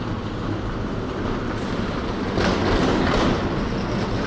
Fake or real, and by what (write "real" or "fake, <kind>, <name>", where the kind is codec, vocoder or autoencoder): real